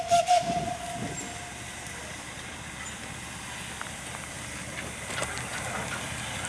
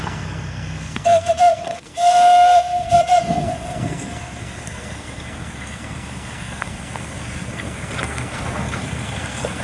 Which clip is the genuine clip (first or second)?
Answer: first